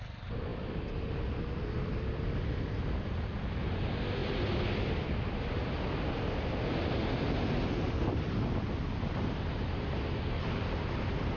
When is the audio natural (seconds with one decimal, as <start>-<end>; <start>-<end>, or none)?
0.0-11.4